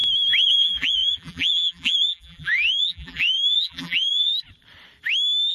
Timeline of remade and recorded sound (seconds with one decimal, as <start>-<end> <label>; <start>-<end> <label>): 0.0-0.5 recorded; 0.5-4.3 remade; 4.3-5.5 recorded